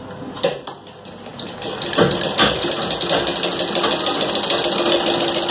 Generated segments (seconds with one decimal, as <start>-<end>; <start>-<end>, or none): none